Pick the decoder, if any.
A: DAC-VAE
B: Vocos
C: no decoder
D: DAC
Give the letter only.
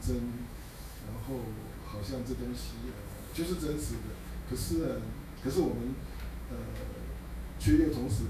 A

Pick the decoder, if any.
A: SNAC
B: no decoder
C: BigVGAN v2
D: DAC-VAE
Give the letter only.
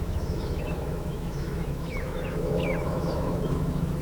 D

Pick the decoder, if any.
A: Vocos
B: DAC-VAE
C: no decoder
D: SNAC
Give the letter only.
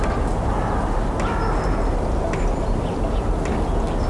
C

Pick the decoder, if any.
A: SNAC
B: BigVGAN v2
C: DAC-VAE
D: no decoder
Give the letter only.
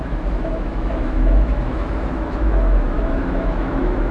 C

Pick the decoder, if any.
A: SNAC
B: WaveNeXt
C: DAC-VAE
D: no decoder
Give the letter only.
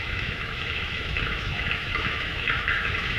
C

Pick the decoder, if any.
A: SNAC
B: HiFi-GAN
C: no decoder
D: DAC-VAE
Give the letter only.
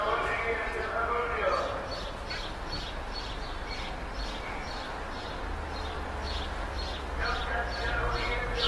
C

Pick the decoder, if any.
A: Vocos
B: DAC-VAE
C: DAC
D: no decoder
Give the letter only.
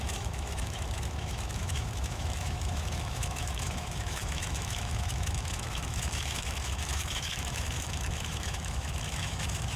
B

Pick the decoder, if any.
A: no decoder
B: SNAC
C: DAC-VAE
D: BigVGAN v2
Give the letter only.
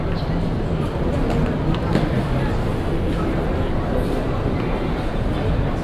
A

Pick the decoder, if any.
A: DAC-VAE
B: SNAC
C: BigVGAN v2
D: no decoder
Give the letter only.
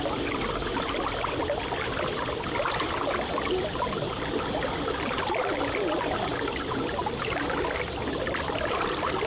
D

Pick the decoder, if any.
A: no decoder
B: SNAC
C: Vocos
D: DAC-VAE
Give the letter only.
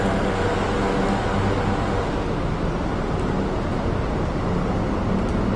A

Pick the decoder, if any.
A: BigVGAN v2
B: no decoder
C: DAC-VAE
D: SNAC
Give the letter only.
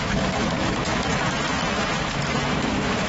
C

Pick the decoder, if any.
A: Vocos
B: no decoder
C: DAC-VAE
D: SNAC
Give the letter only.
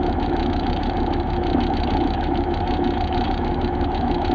C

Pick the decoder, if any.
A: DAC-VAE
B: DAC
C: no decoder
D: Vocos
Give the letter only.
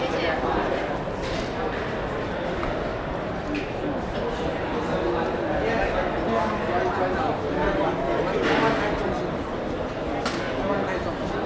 C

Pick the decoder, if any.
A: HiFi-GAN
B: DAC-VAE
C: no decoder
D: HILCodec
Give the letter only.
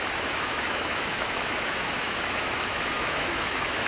B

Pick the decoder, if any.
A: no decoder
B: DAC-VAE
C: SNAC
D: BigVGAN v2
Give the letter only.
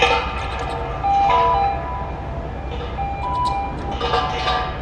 A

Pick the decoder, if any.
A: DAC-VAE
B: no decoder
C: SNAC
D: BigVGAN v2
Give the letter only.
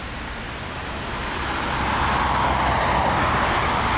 B